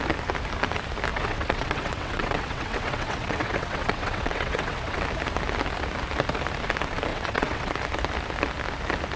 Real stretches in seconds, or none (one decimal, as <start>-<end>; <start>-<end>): 0.0-1.1; 5.0-7.1; 7.7-9.2